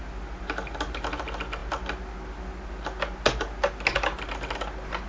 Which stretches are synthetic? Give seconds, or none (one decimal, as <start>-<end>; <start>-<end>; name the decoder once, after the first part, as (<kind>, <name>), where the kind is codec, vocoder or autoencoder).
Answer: none